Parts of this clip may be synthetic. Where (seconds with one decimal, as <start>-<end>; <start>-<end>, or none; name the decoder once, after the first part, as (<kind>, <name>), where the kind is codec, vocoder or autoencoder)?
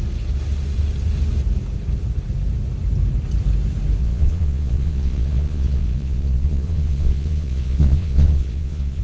4.0-9.0 (vocoder, Vocos)